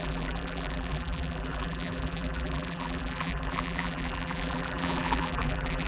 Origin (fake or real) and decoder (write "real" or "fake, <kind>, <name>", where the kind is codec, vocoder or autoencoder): fake, vocoder, BigVGAN v2